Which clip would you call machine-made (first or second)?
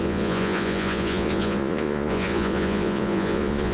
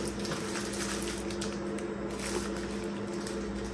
first